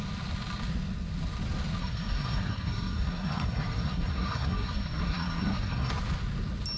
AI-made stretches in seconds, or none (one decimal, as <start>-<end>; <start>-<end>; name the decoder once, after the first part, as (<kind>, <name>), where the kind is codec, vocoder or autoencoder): 1.8-5.9 (codec, SNAC)